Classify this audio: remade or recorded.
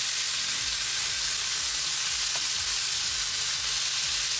recorded